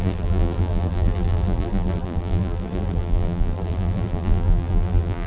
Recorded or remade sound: remade